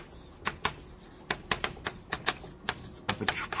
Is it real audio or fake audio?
real